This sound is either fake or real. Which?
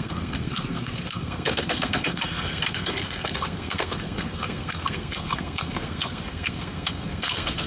fake